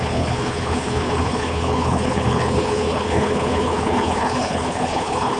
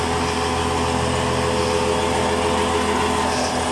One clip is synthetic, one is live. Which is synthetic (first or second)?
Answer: first